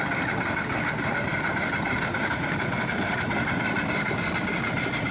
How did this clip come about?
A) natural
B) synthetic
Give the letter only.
A